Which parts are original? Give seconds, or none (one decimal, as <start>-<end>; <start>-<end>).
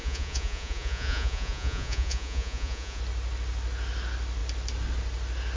3.0-5.6